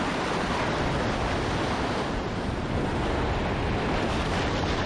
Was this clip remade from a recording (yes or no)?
no